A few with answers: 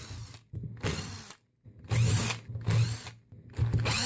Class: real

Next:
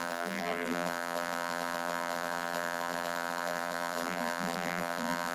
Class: fake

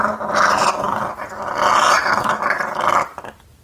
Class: real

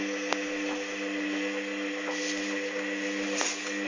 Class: real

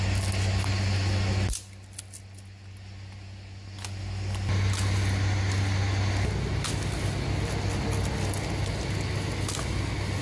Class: real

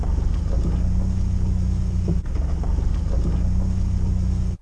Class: real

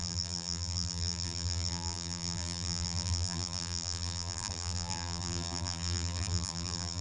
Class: fake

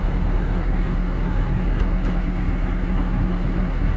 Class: fake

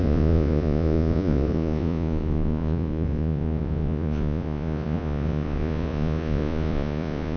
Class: fake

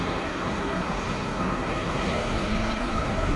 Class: fake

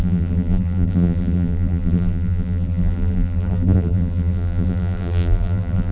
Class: fake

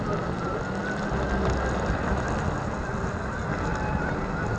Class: real